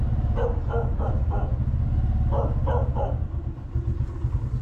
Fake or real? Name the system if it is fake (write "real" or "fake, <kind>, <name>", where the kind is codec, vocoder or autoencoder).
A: real